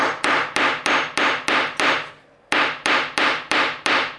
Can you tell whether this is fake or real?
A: real